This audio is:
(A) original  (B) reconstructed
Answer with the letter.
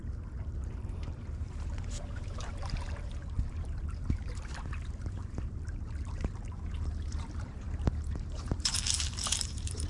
B